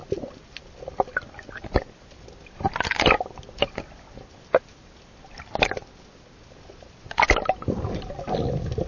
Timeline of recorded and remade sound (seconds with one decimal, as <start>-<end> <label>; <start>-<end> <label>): 0.0-8.9 recorded